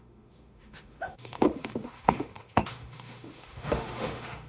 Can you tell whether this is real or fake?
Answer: fake